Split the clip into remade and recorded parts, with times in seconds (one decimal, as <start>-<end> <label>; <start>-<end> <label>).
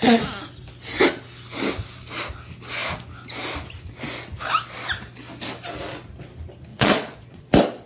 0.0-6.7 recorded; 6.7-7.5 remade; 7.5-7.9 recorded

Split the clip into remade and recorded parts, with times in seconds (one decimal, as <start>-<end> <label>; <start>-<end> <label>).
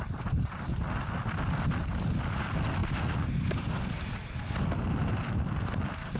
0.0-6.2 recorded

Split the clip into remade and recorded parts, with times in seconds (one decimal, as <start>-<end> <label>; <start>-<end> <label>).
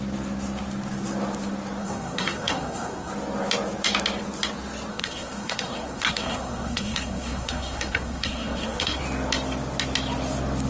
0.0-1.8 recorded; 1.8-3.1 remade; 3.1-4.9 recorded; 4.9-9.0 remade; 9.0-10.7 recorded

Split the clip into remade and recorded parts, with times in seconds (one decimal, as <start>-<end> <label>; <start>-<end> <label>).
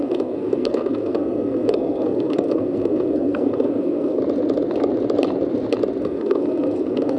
0.0-4.2 remade; 4.2-6.0 recorded; 6.0-7.2 remade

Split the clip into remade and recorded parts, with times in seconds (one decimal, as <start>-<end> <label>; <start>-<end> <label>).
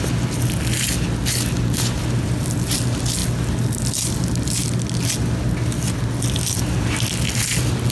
0.0-7.9 recorded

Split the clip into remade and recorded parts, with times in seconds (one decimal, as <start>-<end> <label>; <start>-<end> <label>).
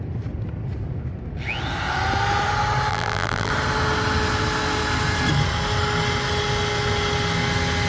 0.0-2.9 recorded; 2.9-3.5 remade; 3.5-7.9 recorded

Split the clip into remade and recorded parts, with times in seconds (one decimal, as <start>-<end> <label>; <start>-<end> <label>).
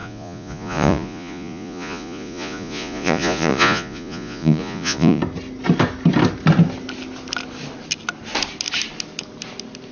0.0-5.2 remade; 5.2-9.9 recorded